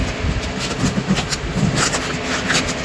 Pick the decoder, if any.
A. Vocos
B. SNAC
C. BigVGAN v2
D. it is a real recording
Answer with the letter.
D